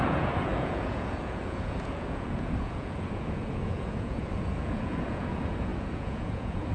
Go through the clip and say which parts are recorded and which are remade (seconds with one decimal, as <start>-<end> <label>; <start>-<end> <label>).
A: 0.0-6.7 remade